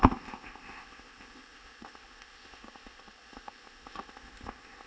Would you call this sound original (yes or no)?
no